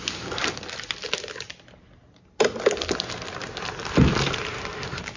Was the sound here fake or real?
real